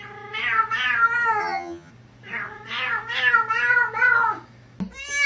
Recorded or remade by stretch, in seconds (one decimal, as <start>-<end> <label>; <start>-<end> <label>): 0.0-1.4 recorded; 1.4-1.9 remade; 1.9-5.3 recorded